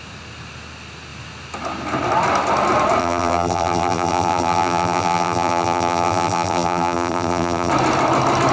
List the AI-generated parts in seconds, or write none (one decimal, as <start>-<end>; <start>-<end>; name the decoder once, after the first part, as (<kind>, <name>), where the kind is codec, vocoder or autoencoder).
3.0-7.7 (vocoder, BigVGAN v2)